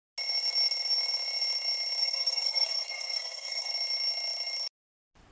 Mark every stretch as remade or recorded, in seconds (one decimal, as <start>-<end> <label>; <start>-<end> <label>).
0.0-2.0 recorded; 2.0-3.7 remade; 3.7-5.3 recorded